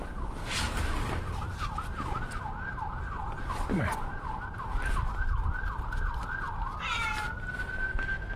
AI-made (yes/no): no